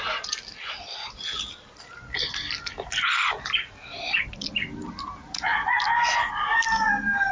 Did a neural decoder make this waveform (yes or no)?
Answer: no